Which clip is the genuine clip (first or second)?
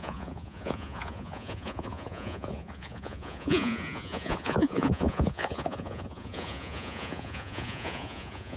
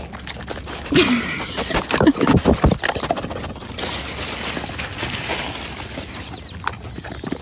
second